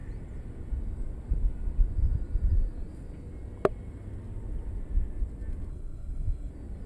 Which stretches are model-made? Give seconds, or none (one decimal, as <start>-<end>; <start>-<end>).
5.7-6.5